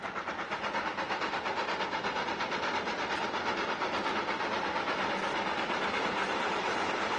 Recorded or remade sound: remade